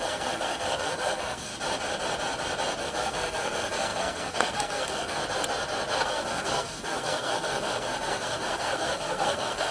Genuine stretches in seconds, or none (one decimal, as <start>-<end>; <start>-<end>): 1.5-2.8; 5.2-6.0

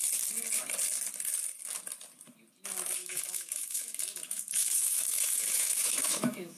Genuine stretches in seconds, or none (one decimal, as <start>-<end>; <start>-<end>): 0.0-3.0

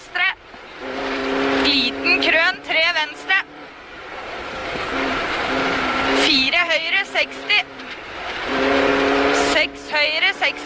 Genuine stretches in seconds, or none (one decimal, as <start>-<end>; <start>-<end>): 1.2-3.3; 8.9-10.7

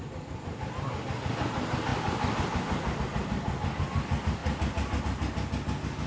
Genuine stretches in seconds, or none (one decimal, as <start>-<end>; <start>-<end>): 0.0-6.1

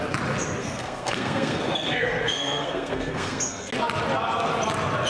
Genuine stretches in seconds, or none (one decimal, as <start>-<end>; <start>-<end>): 0.0-0.6; 3.7-5.1